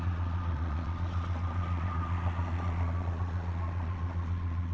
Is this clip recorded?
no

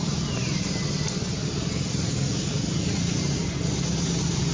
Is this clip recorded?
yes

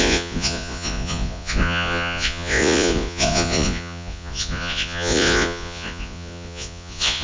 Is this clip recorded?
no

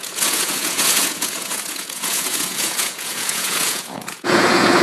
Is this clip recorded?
no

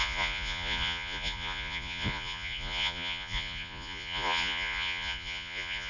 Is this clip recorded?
no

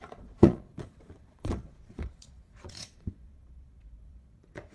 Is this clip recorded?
no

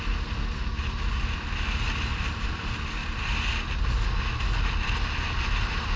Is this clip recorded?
yes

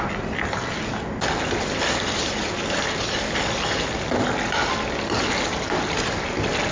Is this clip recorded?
yes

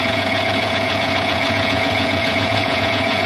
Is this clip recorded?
no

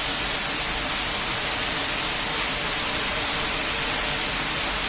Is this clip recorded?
yes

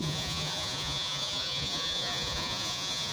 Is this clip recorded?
no